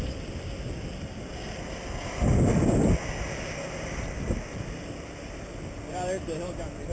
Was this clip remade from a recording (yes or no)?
no